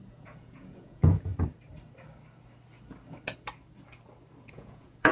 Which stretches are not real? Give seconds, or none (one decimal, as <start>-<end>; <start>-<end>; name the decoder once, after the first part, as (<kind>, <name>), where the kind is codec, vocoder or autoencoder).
0.0-1.3 (vocoder, Vocos); 4.4-5.1